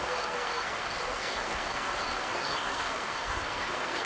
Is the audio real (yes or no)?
no